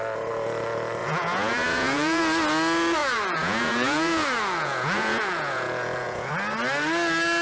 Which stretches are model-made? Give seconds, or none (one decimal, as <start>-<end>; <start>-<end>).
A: 1.0-2.2; 3.0-6.3